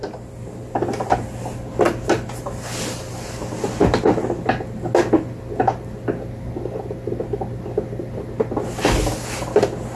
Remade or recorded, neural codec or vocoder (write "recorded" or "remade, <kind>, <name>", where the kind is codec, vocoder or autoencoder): recorded